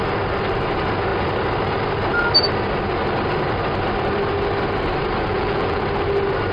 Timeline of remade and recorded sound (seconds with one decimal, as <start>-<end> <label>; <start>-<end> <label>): 0.0-5.3 recorded; 5.3-5.8 remade; 5.8-6.5 recorded